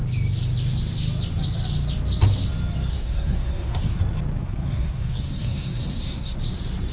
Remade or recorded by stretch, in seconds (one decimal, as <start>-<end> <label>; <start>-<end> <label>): 0.0-2.9 recorded; 2.9-4.0 remade; 4.0-4.4 recorded; 4.4-6.4 remade; 6.4-6.9 recorded